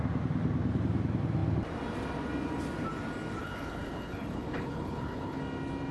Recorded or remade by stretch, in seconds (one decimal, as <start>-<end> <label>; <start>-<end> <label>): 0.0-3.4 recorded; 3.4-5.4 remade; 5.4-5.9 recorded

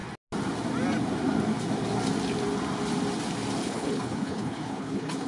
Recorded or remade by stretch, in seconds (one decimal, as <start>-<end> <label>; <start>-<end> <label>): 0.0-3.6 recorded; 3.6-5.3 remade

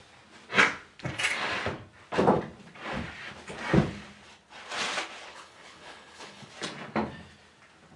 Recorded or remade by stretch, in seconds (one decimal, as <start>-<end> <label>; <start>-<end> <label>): 0.0-5.3 recorded; 5.3-6.5 remade; 6.5-8.0 recorded

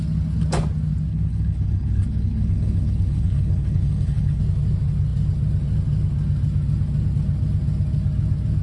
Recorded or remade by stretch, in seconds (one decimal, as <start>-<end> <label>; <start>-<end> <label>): 0.0-1.1 recorded; 1.1-4.4 remade; 4.4-8.6 recorded

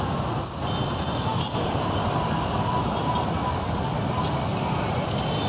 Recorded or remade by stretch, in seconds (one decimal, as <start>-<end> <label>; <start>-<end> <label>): 0.0-5.5 recorded